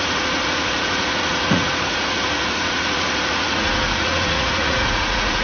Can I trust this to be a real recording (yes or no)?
no